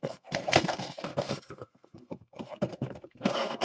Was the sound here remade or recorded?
remade